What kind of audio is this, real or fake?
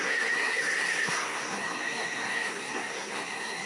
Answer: fake